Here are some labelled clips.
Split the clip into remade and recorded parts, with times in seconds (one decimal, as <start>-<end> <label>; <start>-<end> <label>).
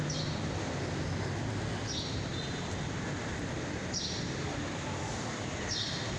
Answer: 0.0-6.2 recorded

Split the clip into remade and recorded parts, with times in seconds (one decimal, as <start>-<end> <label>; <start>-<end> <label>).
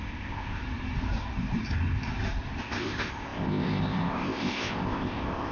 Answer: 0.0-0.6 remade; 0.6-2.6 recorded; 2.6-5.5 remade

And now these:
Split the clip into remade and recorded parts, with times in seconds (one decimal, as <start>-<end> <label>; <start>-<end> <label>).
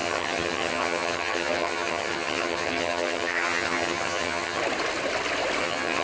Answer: 0.0-4.6 remade; 4.6-5.6 recorded; 5.6-6.0 remade